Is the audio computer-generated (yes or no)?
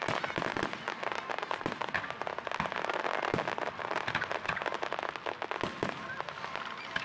no